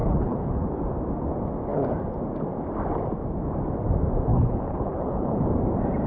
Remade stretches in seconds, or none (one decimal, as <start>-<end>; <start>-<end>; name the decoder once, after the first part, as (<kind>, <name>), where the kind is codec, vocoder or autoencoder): 0.0-0.7 (codec, HILCodec); 4.3-5.4